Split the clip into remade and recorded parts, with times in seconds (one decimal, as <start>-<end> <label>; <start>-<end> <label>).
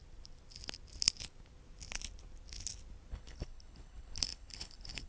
0.0-3.1 recorded; 3.1-5.1 remade